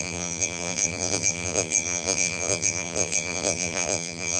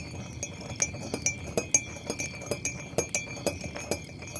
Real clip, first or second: second